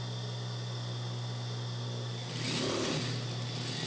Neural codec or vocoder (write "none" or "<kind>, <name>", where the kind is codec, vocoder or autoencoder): none